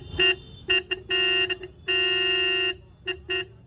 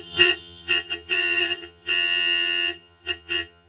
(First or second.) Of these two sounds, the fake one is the second